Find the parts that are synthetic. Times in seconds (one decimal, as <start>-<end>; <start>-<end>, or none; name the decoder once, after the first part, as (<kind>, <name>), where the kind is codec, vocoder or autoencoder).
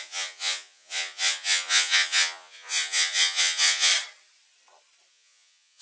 0.0-3.9 (vocoder, Vocos); 5.1-5.8